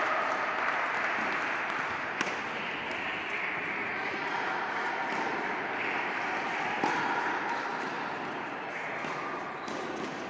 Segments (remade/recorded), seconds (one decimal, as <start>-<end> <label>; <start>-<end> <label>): 0.0-3.8 recorded; 3.8-4.9 remade; 4.9-10.3 recorded